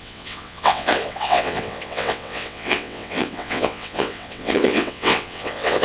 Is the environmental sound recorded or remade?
remade